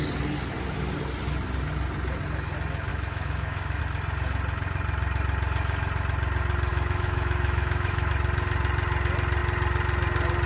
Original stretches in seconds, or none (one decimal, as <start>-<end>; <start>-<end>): 0.0-2.9; 3.8-6.7; 8.1-10.5

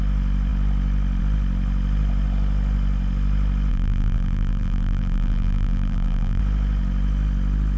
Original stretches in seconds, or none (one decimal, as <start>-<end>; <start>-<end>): 0.0-3.7; 6.4-7.8